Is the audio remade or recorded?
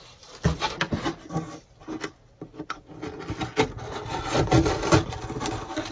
recorded